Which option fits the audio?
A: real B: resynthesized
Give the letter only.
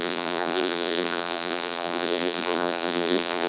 B